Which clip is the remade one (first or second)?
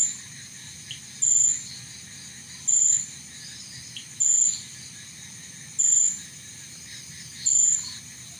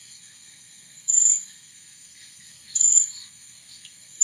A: second